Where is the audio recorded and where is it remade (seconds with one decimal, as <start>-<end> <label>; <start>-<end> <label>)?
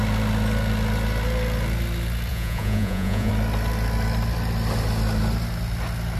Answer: 0.0-2.3 recorded; 2.3-3.3 remade; 3.3-6.2 recorded